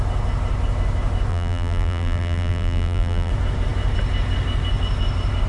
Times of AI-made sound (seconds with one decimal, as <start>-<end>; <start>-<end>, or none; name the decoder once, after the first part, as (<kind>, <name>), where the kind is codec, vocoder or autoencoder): 1.3-3.3 (vocoder, BigVGAN v2)